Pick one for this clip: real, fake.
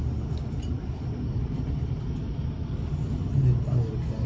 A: real